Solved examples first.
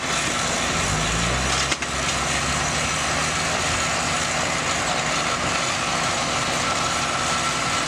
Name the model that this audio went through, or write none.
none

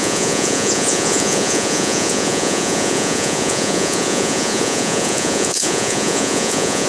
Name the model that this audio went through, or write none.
vocoder, Vocos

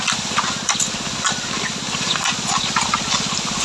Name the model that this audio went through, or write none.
none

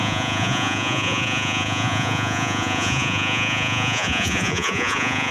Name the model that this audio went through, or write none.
vocoder, Vocos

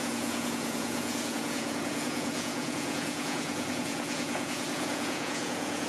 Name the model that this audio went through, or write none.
vocoder, Vocos